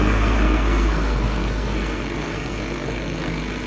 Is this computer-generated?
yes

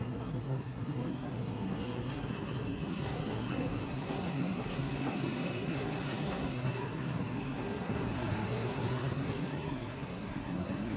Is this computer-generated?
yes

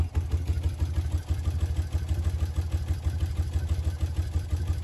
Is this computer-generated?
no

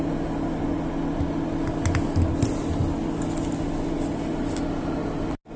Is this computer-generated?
no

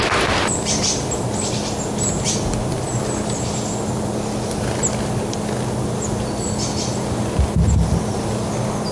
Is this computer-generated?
no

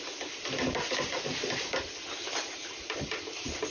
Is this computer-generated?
no